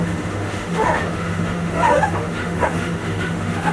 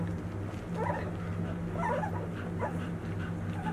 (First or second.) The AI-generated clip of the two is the first